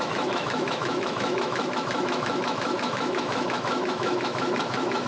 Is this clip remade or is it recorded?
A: remade